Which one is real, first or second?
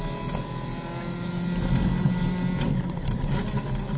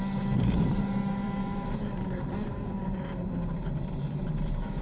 first